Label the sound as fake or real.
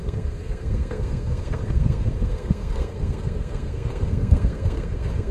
fake